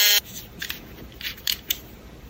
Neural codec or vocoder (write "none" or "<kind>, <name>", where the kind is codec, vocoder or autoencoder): none